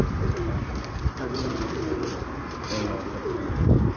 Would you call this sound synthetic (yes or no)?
no